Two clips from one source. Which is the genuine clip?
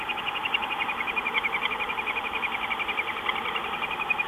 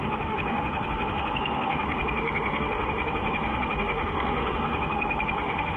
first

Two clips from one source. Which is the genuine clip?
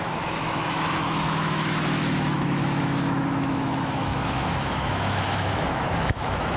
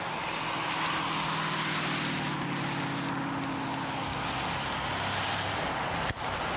second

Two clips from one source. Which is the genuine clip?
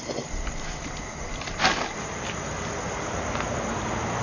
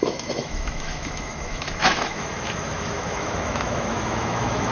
first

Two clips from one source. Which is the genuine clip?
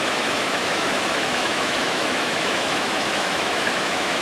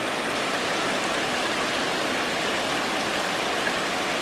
second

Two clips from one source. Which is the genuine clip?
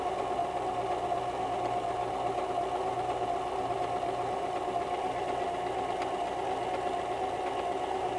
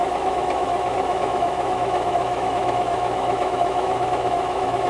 first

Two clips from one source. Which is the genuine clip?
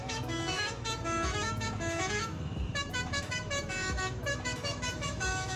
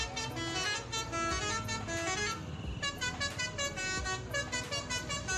second